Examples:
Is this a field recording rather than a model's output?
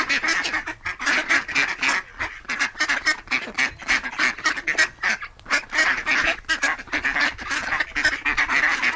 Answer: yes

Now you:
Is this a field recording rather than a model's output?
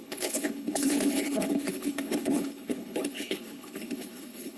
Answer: no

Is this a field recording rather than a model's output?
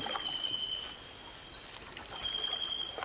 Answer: yes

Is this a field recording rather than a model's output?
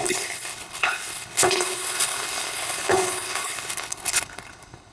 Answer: no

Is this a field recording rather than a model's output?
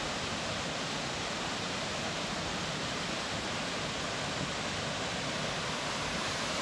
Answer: yes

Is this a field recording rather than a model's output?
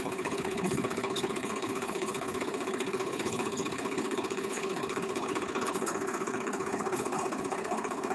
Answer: no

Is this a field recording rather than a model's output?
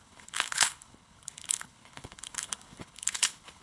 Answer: no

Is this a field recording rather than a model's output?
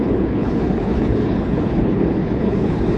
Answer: no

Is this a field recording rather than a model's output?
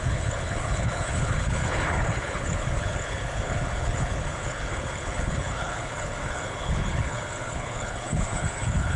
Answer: no